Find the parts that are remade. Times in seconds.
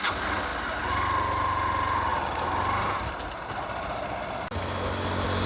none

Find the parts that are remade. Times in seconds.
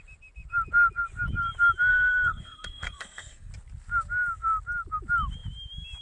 1.9-3.5 (codec, SNAC)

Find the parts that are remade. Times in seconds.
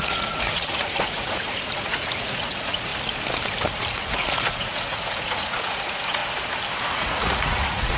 0.0-2.9 (vocoder, Vocos); 3.9-6.2; 6.8-8.0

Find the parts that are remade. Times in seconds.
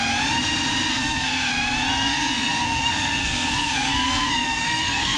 0.9-1.5 (codec, SNAC); 1.9-5.2